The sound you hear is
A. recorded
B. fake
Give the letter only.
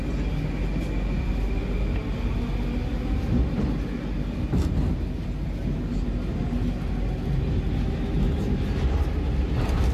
A